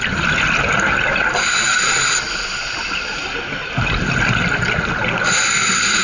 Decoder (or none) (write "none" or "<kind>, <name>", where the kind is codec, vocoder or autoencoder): none